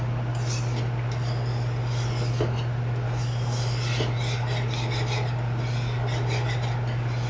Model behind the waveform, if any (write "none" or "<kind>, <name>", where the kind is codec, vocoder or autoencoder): none